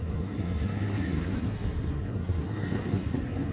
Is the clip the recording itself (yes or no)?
no